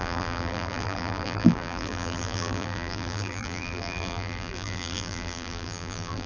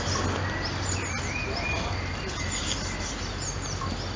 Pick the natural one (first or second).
second